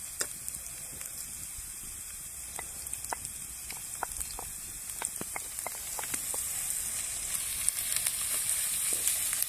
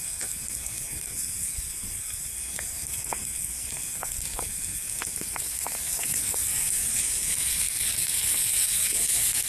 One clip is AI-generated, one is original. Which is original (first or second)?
first